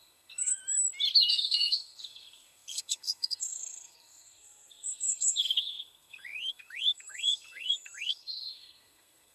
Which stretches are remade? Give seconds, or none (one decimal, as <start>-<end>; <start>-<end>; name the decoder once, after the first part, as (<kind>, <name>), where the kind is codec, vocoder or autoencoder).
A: 0.0-0.6 (codec, SNAC); 1.3-9.3